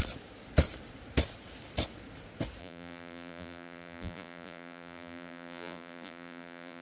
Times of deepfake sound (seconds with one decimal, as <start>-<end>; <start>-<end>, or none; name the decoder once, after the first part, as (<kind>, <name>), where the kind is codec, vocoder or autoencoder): 2.6-6.8 (vocoder, BigVGAN v2)